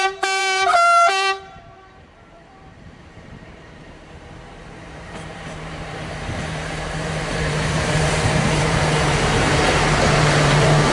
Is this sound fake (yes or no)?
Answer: yes